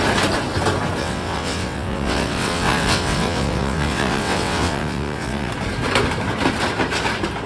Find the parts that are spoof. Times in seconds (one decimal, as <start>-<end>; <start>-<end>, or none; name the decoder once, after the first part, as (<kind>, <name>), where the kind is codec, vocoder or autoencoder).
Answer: 1.0-5.5 (vocoder, WaveNeXt)

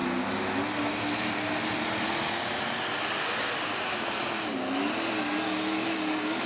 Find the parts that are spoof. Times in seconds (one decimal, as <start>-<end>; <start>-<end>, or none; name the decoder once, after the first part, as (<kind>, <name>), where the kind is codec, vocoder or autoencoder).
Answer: none

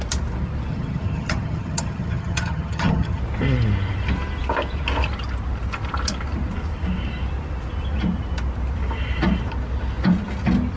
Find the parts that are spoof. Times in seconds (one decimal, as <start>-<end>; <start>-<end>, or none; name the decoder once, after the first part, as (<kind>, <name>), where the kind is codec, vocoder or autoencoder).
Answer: 0.7-3.2 (vocoder, HiFi-GAN)

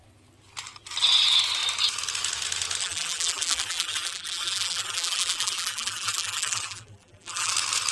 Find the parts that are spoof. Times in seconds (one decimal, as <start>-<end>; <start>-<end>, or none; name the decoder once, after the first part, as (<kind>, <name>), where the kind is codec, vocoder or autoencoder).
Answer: 2.8-7.5 (vocoder, BigVGAN v2)